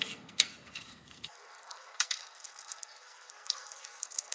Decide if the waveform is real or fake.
fake